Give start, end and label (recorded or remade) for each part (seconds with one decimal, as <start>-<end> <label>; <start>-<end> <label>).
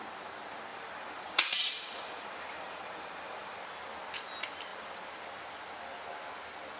0.0-0.7 recorded; 0.7-3.6 remade; 3.6-6.8 recorded